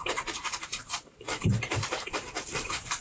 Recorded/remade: remade